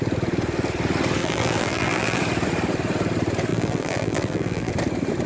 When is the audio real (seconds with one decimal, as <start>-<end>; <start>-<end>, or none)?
0.0-1.2; 2.2-3.5; 4.7-5.3